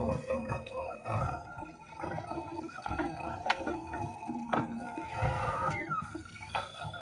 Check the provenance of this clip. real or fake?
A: fake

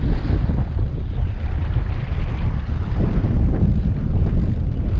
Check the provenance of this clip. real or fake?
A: real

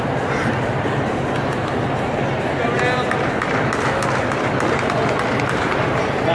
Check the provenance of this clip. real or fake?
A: real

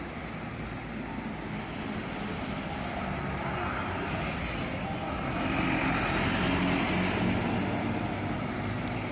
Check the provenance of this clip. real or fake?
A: real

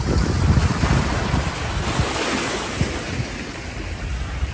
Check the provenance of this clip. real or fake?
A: real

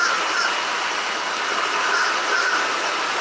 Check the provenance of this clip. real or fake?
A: real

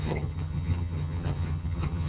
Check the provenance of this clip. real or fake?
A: fake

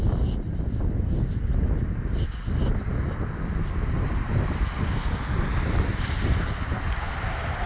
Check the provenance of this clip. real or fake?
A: real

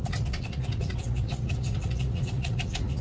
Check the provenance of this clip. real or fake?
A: fake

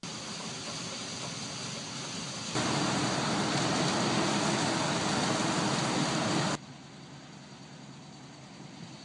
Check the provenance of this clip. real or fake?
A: real